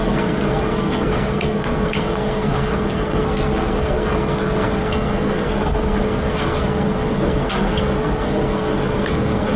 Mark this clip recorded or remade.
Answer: remade